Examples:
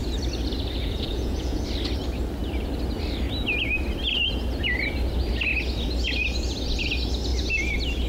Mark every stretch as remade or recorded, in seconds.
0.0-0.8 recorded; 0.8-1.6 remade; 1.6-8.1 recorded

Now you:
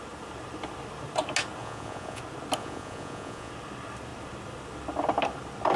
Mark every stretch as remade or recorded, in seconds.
0.0-1.6 recorded; 1.6-2.2 remade; 2.2-2.6 recorded; 2.6-3.5 remade; 3.5-5.8 recorded